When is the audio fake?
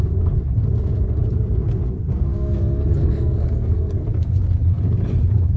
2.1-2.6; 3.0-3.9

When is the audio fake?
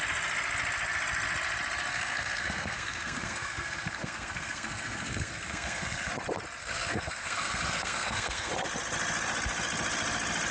1.9-6.1; 6.6-8.5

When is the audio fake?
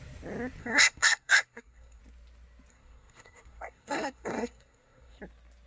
0.6-2.0; 2.7-5.2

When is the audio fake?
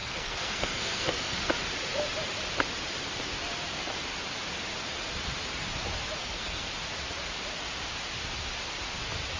0.0-1.5; 6.2-6.7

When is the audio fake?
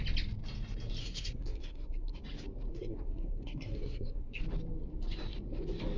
1.0-2.2; 2.7-4.4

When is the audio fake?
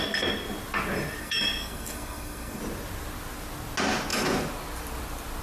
1.2-2.6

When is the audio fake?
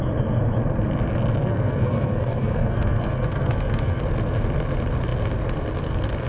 1.4-4.0